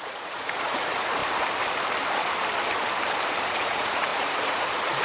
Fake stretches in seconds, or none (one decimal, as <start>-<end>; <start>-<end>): 0.0-1.2; 3.5-5.0